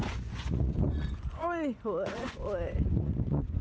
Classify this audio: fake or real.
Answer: fake